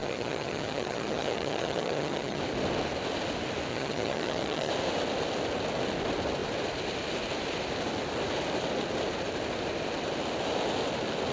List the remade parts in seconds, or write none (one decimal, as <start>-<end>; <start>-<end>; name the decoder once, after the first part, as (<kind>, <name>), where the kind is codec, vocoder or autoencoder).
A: 0.0-2.4 (vocoder, HiFi-GAN); 3.7-4.7